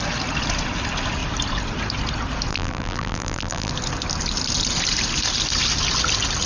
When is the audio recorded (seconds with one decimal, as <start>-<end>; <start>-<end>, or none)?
0.0-2.5; 3.7-6.5